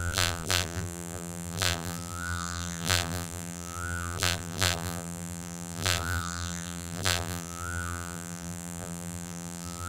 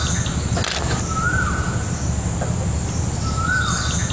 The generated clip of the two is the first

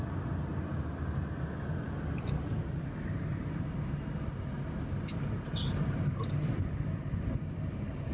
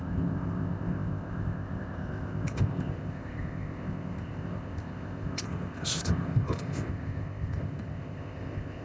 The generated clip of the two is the second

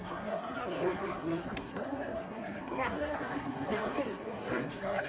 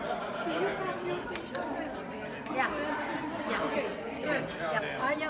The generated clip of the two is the first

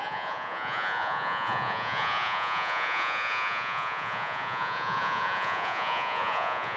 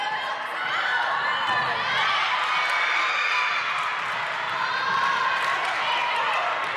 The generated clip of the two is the first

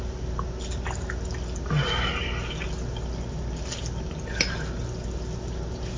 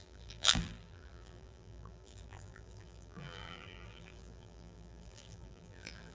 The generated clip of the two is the second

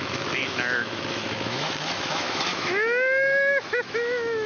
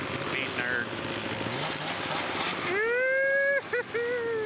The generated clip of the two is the first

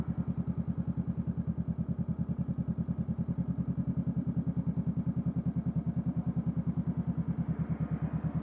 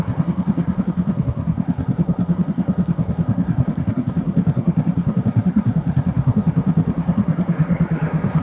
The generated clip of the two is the second